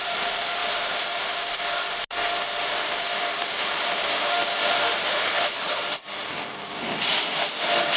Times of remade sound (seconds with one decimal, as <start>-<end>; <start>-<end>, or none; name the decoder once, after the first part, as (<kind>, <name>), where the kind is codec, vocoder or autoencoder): 5.1-5.8 (codec, HILCodec)